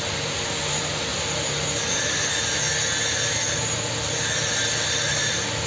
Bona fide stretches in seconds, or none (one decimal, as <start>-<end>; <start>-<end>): 0.0-5.7